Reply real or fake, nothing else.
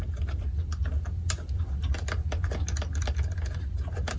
real